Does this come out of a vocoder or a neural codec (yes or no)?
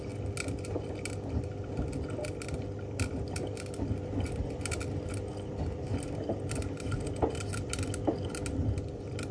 no